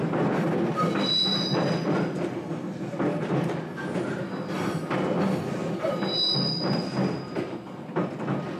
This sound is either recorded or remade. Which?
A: recorded